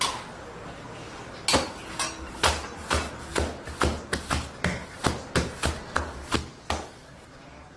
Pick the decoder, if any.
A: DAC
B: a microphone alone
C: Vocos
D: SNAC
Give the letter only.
B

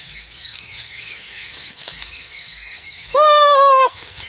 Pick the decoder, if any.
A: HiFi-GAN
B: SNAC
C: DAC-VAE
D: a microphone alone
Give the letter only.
B